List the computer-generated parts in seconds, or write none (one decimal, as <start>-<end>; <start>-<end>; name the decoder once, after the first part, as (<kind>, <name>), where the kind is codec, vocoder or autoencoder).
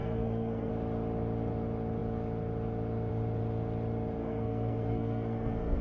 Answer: 0.0-0.7 (codec, SNAC); 4.2-5.8